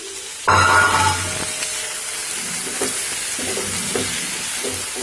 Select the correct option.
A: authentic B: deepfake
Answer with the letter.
A